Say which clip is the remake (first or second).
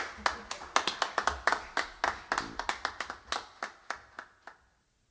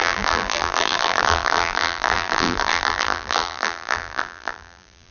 second